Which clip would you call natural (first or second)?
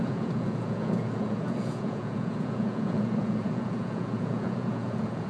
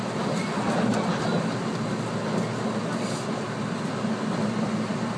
second